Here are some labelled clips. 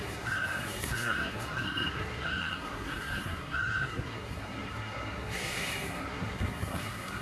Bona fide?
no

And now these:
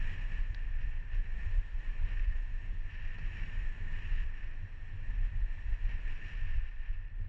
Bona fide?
yes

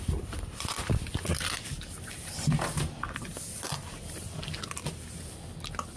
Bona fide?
yes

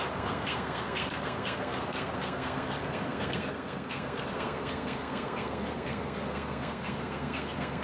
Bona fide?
no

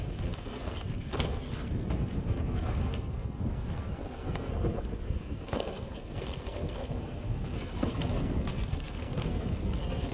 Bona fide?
no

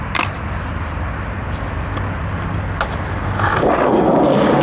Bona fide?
yes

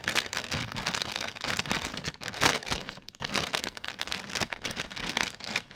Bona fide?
no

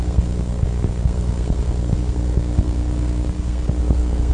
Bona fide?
no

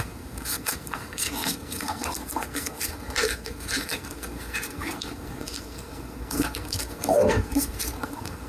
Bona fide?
no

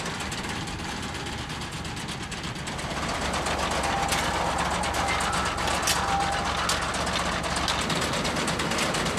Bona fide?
yes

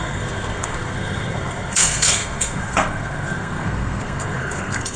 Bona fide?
no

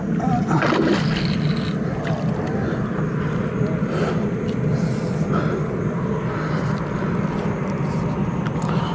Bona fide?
yes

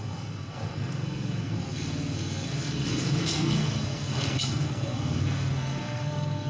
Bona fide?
no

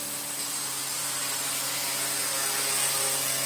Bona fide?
yes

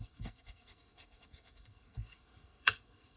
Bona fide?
no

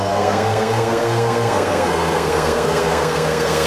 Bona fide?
no